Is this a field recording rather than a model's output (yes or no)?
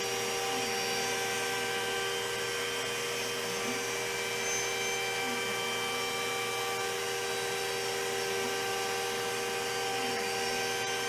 yes